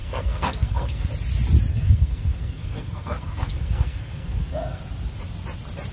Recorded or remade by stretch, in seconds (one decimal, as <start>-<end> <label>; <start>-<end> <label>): 0.0-1.1 remade; 1.1-1.7 recorded; 1.7-4.8 remade; 4.8-5.9 recorded